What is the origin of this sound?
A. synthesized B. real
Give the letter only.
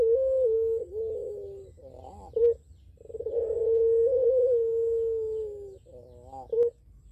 B